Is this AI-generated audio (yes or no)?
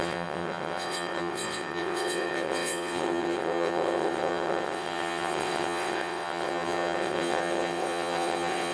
yes